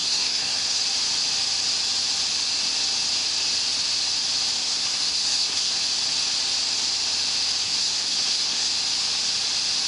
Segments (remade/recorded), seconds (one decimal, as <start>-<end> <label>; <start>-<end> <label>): 0.0-0.8 remade; 0.8-4.6 recorded; 4.6-5.7 remade; 5.7-7.6 recorded; 7.6-8.7 remade; 8.7-9.9 recorded